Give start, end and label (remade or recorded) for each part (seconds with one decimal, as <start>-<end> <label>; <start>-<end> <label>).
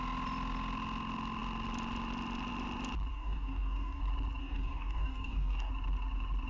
0.0-3.1 recorded; 3.1-4.0 remade; 4.0-4.4 recorded; 4.4-5.7 remade; 5.7-6.5 recorded